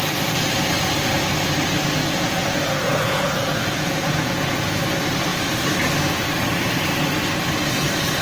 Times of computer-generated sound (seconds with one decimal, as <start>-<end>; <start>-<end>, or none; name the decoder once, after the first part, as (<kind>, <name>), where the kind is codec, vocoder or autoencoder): 2.0-4.8 (vocoder, Vocos)